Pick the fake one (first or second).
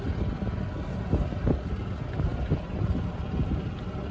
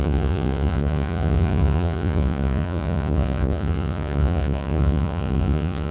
second